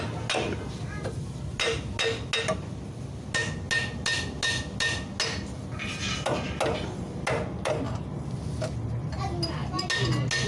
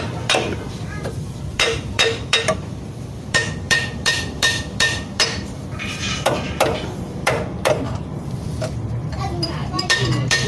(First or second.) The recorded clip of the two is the first